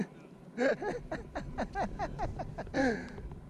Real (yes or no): yes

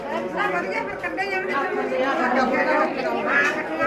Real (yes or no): yes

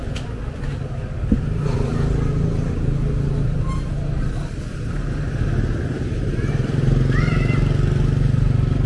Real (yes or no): yes